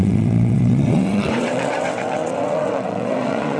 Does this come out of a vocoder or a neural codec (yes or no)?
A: yes